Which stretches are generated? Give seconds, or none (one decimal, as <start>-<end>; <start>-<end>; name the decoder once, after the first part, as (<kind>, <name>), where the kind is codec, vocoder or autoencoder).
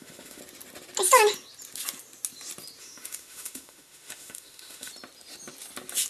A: 0.0-0.4 (autoencoder, DAC-VAE); 2.8-4.9